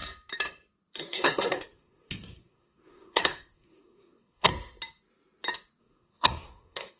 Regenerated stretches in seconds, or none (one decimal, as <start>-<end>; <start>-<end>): 1.0-4.5; 5.8-7.0